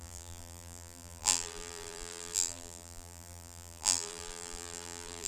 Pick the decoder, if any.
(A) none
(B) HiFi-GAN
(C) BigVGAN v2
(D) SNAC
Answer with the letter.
C